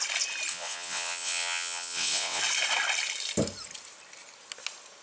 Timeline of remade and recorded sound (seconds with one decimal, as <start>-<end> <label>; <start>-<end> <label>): 0.0-0.5 recorded; 0.5-2.4 remade; 2.4-5.0 recorded